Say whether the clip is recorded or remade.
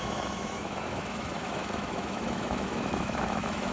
remade